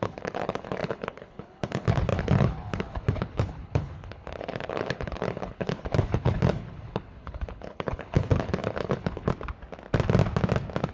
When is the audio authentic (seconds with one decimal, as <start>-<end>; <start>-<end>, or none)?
9.3-10.9